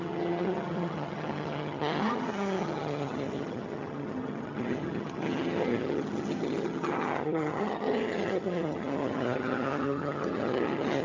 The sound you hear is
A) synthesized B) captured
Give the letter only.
A